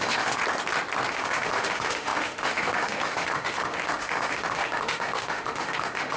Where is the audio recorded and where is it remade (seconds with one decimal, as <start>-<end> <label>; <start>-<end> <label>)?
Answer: 0.0-0.4 remade; 0.4-1.1 recorded; 1.1-6.2 remade